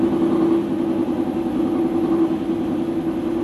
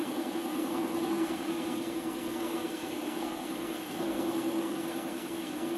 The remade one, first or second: second